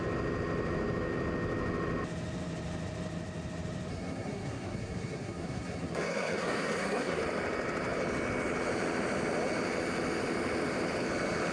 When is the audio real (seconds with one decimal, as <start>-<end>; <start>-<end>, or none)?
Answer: 0.0-3.9; 7.2-11.5